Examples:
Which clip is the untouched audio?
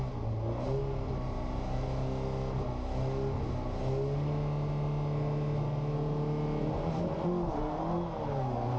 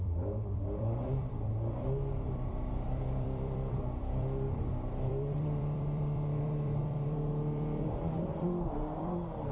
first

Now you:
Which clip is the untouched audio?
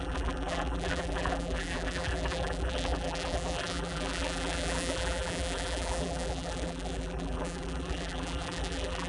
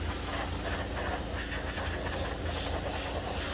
second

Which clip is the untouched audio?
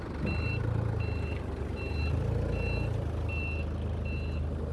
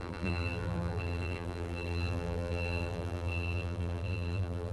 first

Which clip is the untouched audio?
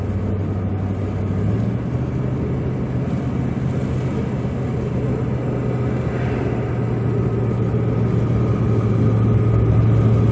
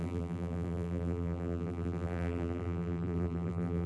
first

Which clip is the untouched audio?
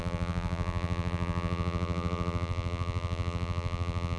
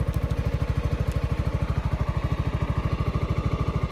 second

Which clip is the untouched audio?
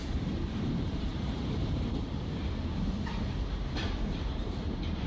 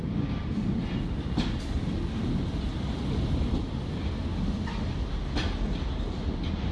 second